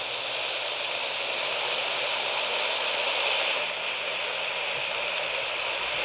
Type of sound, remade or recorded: recorded